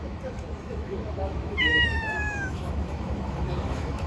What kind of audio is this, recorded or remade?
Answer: remade